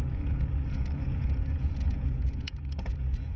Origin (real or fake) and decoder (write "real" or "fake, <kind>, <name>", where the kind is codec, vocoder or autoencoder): fake, vocoder, Vocos